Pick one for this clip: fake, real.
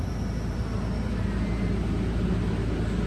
real